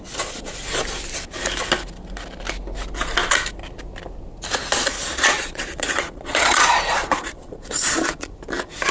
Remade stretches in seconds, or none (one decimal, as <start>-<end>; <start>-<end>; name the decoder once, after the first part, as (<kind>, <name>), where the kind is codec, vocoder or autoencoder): 5.0-8.3 (vocoder, Vocos)